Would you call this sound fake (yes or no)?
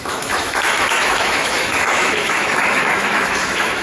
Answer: yes